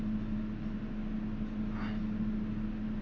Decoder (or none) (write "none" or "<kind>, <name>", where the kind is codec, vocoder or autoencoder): none